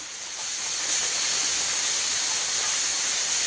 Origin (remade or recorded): recorded